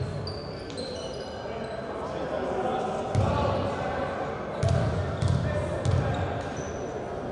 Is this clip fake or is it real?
real